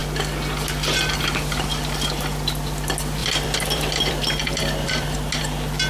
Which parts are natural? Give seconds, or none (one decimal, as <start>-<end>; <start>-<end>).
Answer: 0.0-3.2; 5.4-5.9